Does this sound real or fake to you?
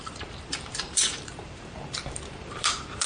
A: fake